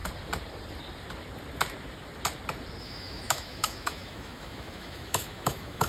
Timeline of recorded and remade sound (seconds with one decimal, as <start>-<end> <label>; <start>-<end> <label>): 0.0-2.8 recorded; 2.8-5.9 remade